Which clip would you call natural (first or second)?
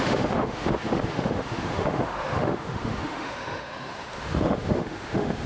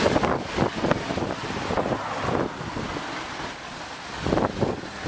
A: second